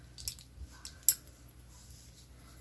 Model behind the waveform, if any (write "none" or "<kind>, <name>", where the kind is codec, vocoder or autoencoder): none